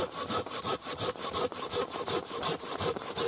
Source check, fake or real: fake